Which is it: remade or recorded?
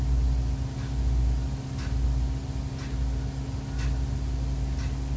recorded